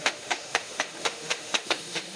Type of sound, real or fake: fake